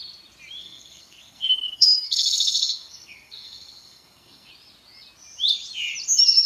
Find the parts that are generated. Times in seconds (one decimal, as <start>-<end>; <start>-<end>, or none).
0.6-4.5